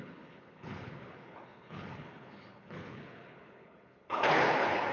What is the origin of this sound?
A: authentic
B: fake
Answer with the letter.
B